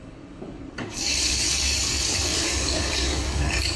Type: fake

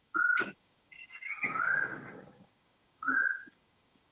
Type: fake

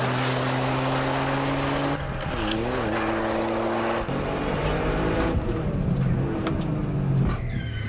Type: real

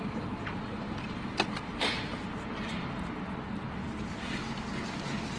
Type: real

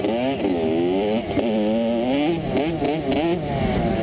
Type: real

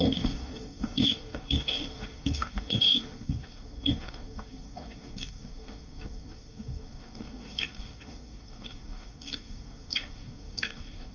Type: fake